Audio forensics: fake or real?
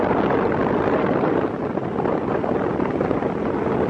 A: real